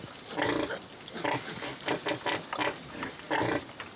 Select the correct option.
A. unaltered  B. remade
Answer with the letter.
A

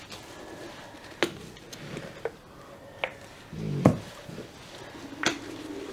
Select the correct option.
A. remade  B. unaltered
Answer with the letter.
B